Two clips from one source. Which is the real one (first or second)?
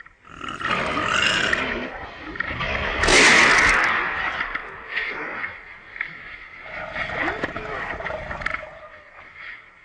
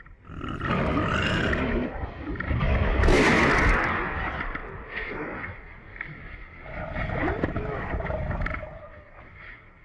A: first